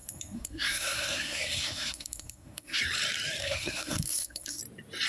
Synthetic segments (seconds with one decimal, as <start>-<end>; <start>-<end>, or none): 0.0-2.8; 3.4-4.6